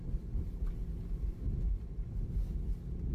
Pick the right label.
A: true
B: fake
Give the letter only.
A